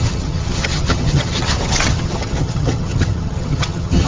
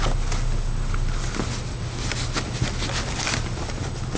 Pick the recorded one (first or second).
second